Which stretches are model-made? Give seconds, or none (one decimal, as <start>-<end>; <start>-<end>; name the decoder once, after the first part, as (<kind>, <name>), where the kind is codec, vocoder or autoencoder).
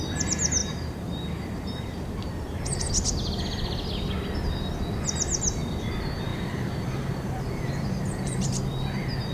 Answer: 0.6-2.6 (vocoder, BigVGAN v2); 6.3-8.6